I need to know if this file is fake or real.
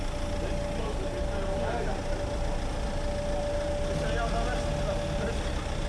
real